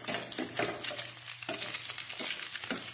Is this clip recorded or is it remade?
recorded